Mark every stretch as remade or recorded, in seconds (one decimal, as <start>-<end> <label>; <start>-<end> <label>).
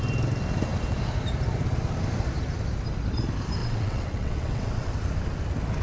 0.0-3.6 recorded; 3.6-4.9 remade; 4.9-5.8 recorded